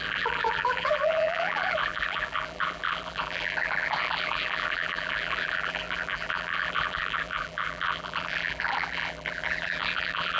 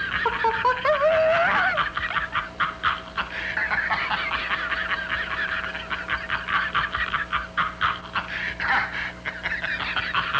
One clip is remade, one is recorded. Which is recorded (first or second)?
second